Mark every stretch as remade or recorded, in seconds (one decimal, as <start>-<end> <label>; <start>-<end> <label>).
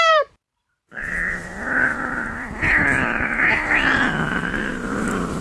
0.0-1.5 remade; 1.5-4.7 recorded; 4.7-5.4 remade